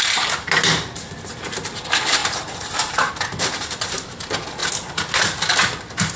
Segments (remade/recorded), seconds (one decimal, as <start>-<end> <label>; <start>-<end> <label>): 0.0-2.2 recorded; 2.2-3.1 remade; 3.1-6.2 recorded